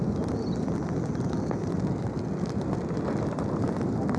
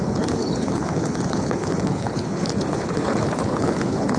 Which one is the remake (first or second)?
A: second